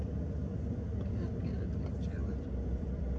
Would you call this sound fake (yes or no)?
yes